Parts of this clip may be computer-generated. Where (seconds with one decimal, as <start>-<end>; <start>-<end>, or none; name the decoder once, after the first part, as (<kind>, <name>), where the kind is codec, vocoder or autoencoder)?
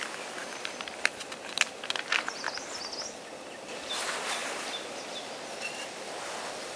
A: 0.4-1.9 (vocoder, BigVGAN v2); 4.4-4.9